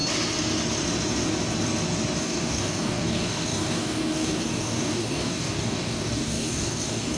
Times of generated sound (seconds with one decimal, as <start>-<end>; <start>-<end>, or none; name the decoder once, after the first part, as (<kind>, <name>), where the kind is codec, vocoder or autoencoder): 2.2-7.2 (codec, DAC)